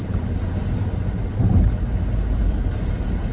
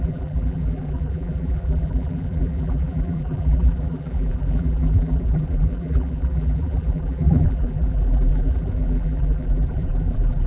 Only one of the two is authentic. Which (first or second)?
first